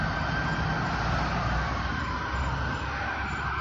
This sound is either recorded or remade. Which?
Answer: recorded